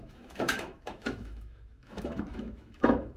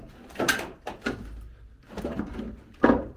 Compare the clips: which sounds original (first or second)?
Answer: second